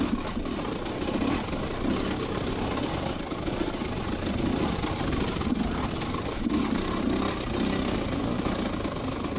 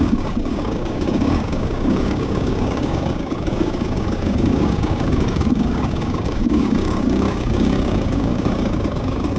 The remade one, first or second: second